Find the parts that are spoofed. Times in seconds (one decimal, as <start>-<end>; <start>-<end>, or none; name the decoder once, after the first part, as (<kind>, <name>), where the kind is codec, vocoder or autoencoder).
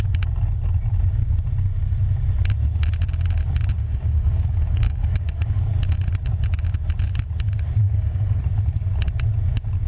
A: 3.8-5.6 (codec, DAC); 7.8-8.4